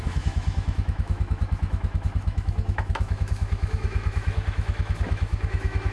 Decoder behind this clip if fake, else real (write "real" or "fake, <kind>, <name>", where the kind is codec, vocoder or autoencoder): fake, autoencoder, DAC-VAE